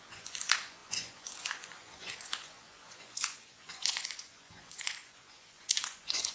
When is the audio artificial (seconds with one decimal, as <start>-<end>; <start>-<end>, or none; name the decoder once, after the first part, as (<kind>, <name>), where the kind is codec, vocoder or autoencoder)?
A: 0.0-6.3 (vocoder, Vocos)